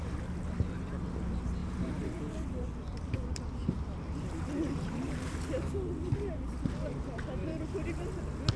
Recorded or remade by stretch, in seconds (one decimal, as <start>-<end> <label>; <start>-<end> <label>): 0.0-1.6 recorded; 1.6-5.4 remade; 5.4-7.4 recorded; 7.4-8.1 remade; 8.1-8.6 recorded